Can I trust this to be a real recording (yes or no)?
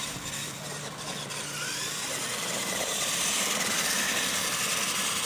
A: no